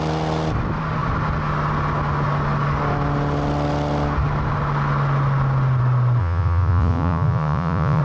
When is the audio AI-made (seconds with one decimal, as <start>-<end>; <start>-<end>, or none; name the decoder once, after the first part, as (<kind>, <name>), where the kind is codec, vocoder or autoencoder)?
6.2-8.0 (vocoder, Vocos)